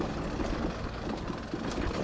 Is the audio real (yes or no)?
yes